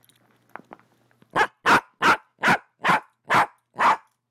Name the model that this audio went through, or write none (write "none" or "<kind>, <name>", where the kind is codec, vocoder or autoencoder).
none